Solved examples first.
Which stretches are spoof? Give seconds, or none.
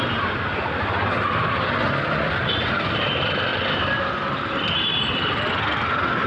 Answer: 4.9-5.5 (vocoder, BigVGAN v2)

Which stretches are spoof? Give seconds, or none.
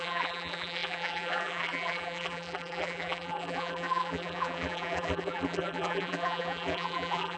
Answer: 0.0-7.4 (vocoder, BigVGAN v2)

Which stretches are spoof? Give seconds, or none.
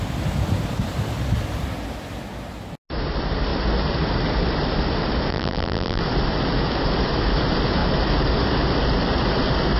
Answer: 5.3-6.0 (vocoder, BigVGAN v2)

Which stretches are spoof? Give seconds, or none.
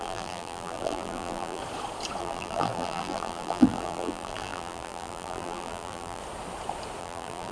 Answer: 0.0-1.6 (vocoder, BigVGAN v2); 2.2-6.2; 7.0-7.5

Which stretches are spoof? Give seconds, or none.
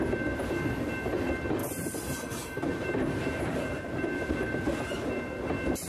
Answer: 1.6-5.1 (vocoder, BigVGAN v2)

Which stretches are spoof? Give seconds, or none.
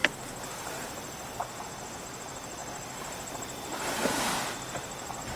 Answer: 2.0-2.6 (vocoder, BigVGAN v2)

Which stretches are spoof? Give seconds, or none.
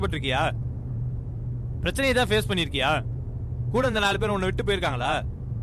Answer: 0.0-1.4 (vocoder, BigVGAN v2); 3.1-4.3; 4.8-5.6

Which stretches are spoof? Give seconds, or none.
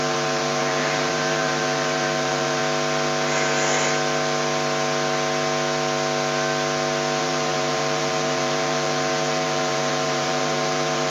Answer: 0.0-2.6 (vocoder, BigVGAN v2); 7.2-11.1